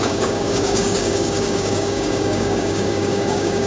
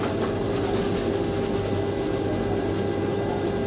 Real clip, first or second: second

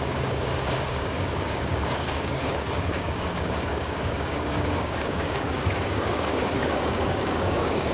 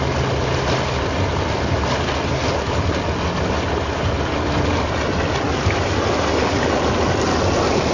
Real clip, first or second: second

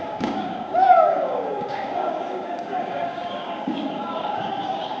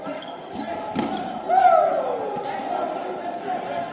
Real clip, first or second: second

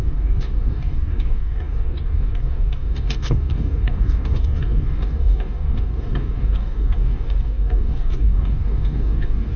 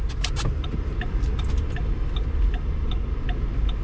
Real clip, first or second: second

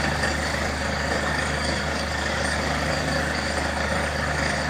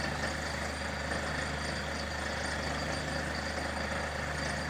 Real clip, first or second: second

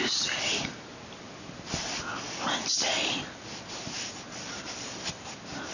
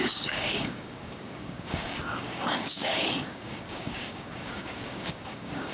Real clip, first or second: first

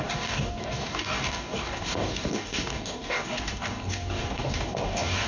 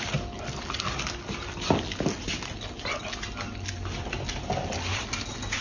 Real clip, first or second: second